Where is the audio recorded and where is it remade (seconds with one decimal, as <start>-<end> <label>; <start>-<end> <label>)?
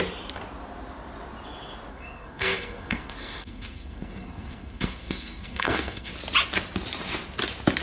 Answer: 0.0-1.9 recorded; 1.9-6.1 remade; 6.1-7.8 recorded